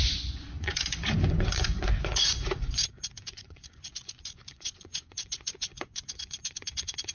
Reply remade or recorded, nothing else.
remade